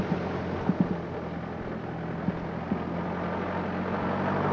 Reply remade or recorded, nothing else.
recorded